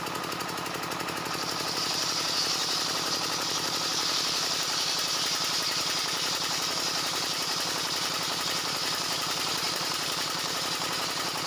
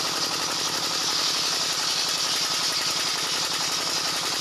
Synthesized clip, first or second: first